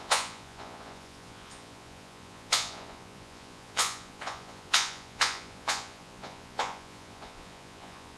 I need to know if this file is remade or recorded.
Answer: remade